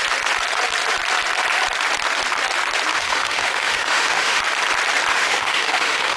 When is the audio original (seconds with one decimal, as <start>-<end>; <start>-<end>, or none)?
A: 0.0-2.9; 4.4-5.1